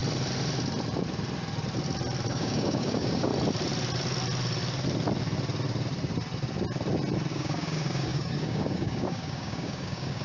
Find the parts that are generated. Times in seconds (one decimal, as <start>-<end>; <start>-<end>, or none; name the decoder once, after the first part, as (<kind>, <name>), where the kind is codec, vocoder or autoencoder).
2.3-3.3 (codec, DAC); 7.3-10.2